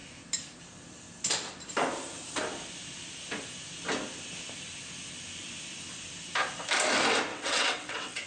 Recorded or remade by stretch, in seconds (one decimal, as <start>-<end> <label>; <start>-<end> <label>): 0.0-7.3 recorded; 7.3-8.3 remade